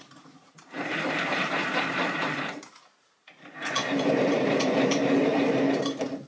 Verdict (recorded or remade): remade